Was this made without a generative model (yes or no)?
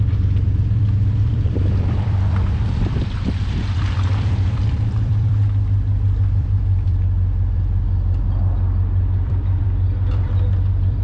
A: no